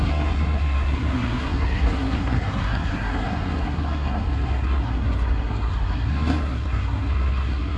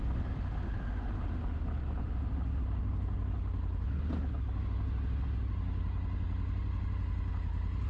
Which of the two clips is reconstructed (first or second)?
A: first